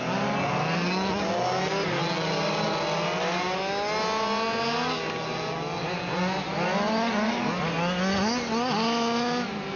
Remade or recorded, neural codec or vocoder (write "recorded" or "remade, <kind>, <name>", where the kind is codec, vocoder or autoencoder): recorded